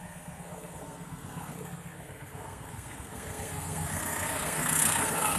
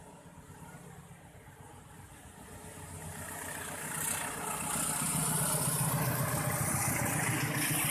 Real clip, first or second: second